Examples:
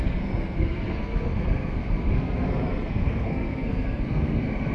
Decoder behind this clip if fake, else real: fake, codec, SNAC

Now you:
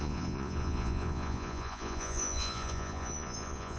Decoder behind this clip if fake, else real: fake, vocoder, Vocos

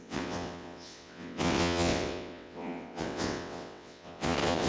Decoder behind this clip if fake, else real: fake, vocoder, WaveNeXt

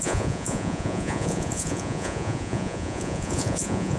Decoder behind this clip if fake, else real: fake, vocoder, Vocos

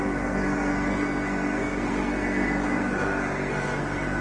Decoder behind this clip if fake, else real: fake, codec, SNAC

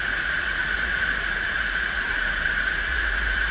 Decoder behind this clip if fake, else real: fake, vocoder, Vocos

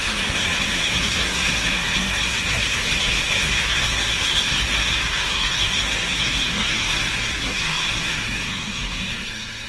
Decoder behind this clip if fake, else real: fake, codec, SNAC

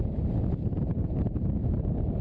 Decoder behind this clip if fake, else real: real